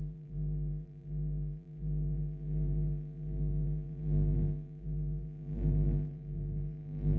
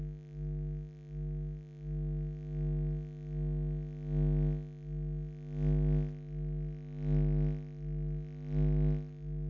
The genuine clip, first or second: second